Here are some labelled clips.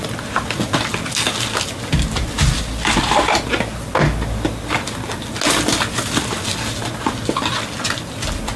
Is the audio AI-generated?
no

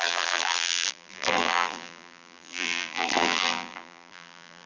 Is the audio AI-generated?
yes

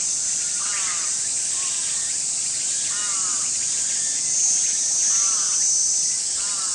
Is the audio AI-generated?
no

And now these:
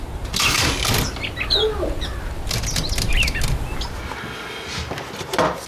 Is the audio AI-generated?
no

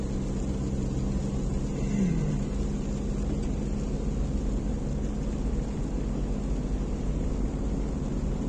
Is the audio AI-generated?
no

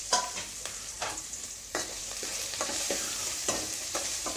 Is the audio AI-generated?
yes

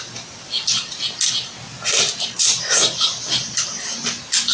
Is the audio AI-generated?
no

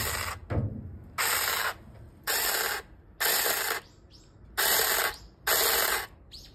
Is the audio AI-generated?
no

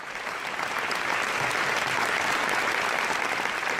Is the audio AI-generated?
no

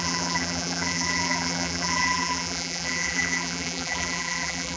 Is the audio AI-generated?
yes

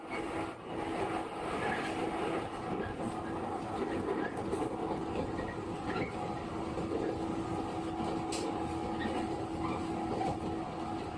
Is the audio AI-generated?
no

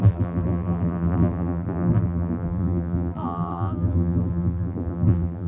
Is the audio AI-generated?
yes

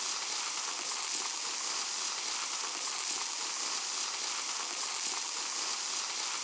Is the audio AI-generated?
no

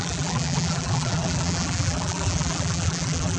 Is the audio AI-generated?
yes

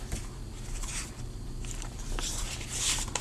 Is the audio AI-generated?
yes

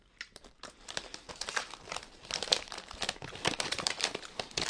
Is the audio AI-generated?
yes